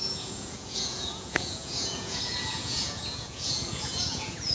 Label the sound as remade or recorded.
remade